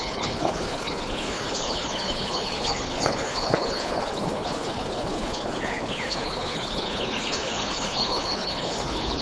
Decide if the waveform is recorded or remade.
remade